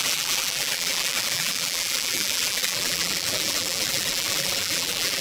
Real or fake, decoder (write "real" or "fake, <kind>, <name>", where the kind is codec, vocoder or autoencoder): fake, vocoder, BigVGAN v2